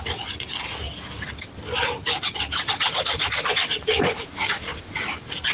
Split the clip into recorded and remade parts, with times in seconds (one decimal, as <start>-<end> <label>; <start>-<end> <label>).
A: 0.0-5.5 recorded